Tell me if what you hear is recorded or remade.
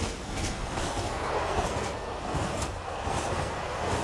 remade